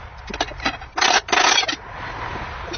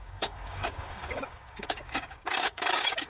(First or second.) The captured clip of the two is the first